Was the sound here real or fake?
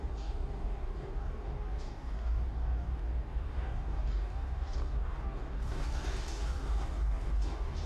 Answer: fake